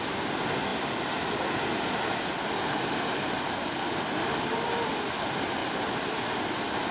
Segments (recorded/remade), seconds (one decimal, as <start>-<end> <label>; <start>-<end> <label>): 0.0-6.9 recorded